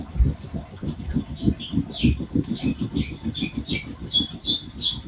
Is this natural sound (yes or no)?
yes